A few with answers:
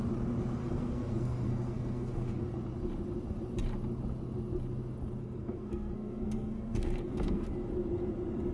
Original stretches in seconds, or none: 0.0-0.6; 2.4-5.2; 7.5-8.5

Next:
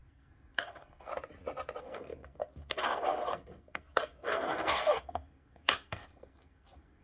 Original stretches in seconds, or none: 1.1-1.8